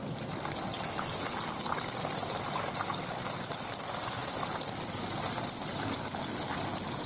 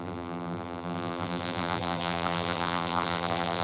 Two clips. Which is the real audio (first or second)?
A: first